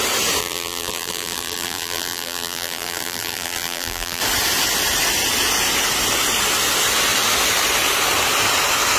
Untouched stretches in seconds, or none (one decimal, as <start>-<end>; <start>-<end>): 0.0-0.4; 4.2-9.0